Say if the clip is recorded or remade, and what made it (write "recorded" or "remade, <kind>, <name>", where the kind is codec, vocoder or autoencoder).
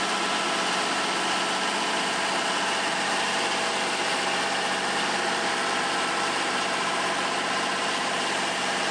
recorded